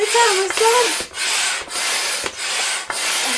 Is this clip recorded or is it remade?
recorded